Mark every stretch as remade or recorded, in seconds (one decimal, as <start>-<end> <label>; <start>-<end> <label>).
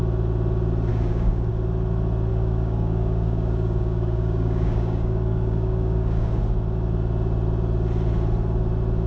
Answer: 0.0-0.9 recorded; 0.9-1.5 remade; 1.5-2.3 recorded; 2.3-6.4 remade; 6.4-9.1 recorded